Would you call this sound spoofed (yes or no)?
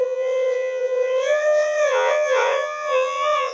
yes